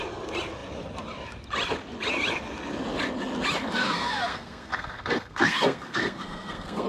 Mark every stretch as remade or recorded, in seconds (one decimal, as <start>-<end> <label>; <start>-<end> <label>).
0.0-3.8 recorded; 3.8-6.9 remade